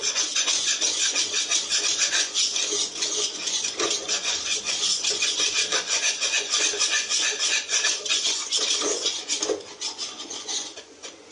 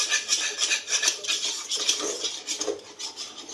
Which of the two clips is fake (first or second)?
first